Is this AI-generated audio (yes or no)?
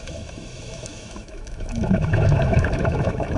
yes